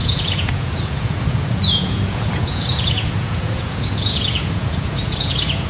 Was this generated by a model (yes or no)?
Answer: yes